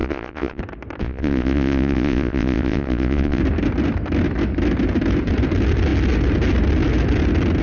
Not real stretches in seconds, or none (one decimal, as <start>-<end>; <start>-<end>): 0.0-0.6; 1.0-3.4